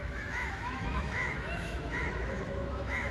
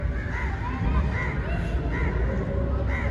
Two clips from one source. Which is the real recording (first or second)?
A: second